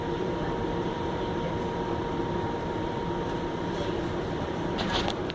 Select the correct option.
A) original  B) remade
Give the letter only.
B